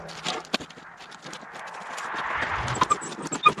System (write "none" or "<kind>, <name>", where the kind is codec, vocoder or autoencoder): none